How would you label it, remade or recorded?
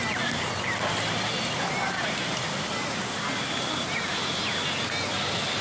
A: recorded